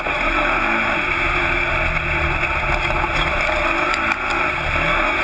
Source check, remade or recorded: recorded